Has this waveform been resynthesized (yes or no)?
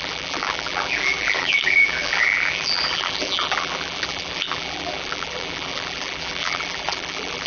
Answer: yes